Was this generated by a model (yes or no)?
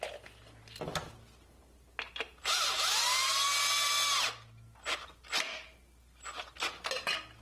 no